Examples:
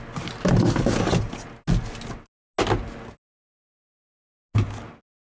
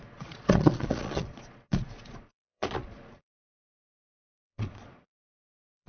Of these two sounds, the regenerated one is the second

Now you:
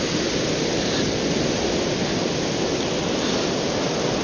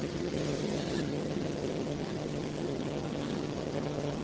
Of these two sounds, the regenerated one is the second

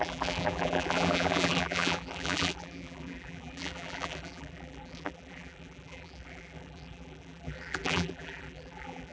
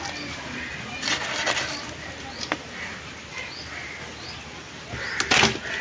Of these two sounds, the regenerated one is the first